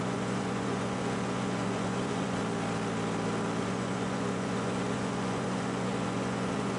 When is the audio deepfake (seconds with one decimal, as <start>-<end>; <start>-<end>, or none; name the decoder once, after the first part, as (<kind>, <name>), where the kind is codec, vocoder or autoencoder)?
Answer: 0.0-2.4 (vocoder, Vocos); 3.6-6.8